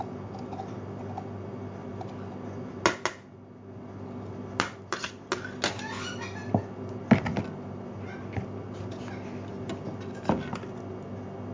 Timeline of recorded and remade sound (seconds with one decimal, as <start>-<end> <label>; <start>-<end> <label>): 0.0-11.5 recorded